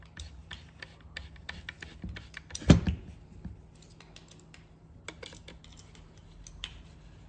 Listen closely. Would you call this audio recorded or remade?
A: recorded